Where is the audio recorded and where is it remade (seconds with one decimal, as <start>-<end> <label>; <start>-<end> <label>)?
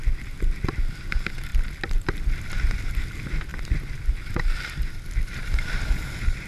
0.0-6.5 recorded